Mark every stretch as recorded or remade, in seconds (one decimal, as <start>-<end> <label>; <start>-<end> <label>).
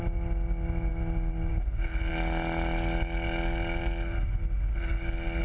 0.0-5.4 recorded